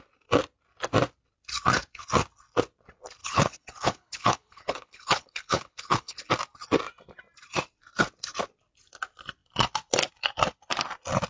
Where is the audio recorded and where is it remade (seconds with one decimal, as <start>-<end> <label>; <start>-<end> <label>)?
0.0-3.2 recorded; 3.2-6.3 remade; 6.3-11.3 recorded